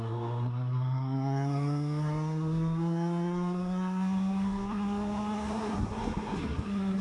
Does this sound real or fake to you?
fake